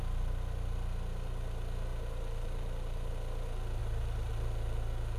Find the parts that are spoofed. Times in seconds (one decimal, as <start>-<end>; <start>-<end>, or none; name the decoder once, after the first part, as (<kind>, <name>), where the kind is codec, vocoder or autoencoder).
1.9-3.1 (vocoder, BigVGAN v2); 3.8-5.2